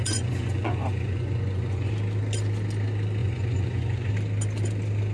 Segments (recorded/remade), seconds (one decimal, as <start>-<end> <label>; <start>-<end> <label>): 0.0-1.9 remade; 1.9-3.2 recorded; 3.2-4.1 remade; 4.1-5.1 recorded